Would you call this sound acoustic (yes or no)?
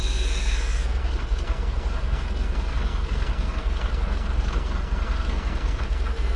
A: no